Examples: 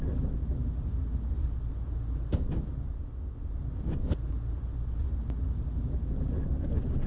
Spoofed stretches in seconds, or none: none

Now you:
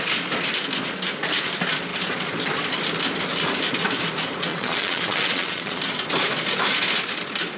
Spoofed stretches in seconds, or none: 4.5-5.8